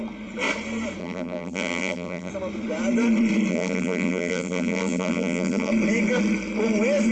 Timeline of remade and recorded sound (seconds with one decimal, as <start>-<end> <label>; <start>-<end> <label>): 0.0-1.0 recorded; 1.0-2.3 remade; 2.3-3.5 recorded; 3.5-5.7 remade; 5.7-7.1 recorded